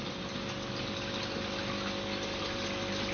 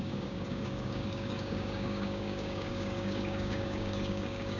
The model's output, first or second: second